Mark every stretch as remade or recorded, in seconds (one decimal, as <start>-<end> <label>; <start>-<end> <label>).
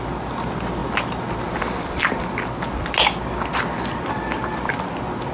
0.0-5.3 recorded